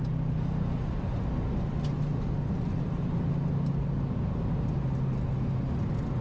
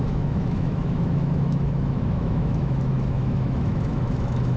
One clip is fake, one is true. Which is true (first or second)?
first